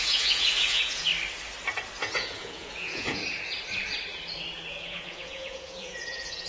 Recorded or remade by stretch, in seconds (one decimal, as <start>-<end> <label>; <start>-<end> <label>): 0.0-1.1 remade; 1.1-2.0 recorded; 2.0-3.2 remade; 3.2-4.7 recorded; 4.7-6.5 remade